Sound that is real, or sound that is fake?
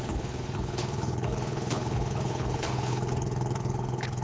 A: fake